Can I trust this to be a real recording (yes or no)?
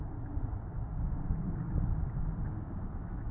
yes